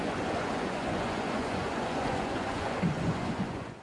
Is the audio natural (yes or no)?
no